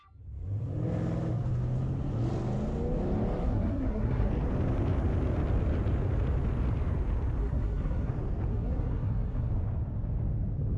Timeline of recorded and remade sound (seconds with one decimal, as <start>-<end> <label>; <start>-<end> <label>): 0.0-3.4 recorded; 3.4-4.3 remade; 4.3-7.4 recorded; 7.4-8.1 remade; 8.1-8.5 recorded; 8.5-9.5 remade; 9.5-10.8 recorded